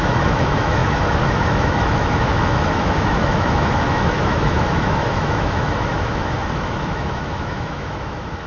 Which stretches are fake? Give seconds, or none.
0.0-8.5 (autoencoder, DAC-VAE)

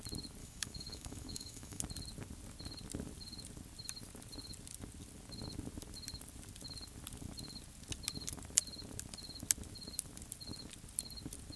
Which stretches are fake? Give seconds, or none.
0.4-1.8 (autoencoder, DAC-VAE)

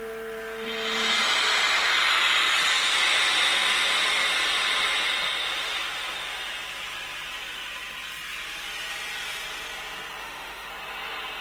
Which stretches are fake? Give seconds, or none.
10.2-10.7 (autoencoder, DAC-VAE)

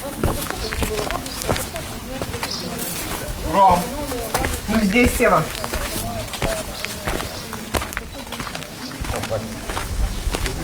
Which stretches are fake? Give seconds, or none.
0.0-1.7 (autoencoder, DAC-VAE); 3.2-6.0; 8.5-10.6

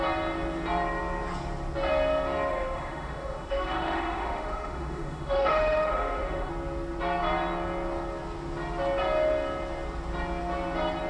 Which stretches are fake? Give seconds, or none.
2.5-6.5 (autoencoder, DAC-VAE)